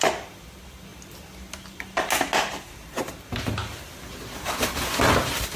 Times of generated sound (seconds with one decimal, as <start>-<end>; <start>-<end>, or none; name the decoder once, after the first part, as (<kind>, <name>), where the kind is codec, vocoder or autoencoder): none